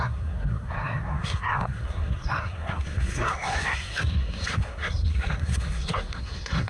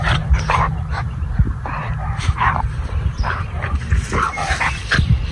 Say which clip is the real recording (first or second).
second